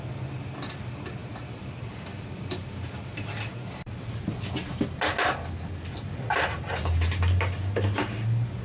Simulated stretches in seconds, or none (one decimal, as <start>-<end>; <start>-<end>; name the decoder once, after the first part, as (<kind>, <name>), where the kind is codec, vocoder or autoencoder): 1.2-4.2 (vocoder, BigVGAN v2)